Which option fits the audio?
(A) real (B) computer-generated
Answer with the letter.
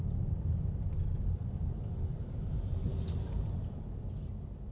A